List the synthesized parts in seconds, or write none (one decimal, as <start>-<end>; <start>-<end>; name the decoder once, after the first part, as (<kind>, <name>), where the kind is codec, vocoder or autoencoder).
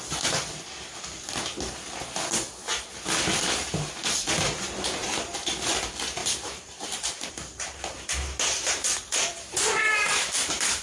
6.2-7.3 (vocoder, BigVGAN v2); 9.3-10.8